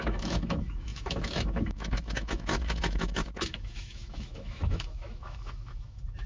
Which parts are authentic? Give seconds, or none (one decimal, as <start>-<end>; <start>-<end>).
none